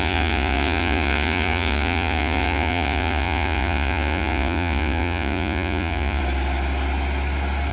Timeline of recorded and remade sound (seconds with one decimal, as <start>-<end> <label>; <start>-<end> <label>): 0.0-6.2 remade; 6.2-7.7 recorded